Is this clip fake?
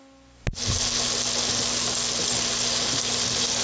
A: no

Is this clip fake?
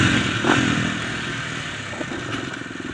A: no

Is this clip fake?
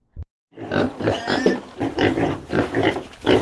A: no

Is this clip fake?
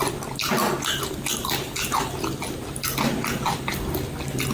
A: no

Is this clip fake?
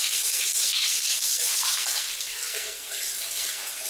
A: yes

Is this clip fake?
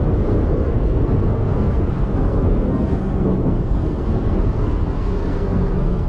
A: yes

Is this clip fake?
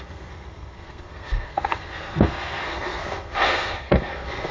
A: yes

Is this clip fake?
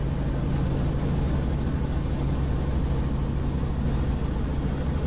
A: no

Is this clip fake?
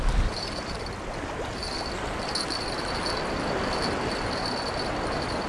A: no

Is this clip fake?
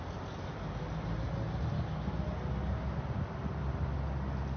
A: no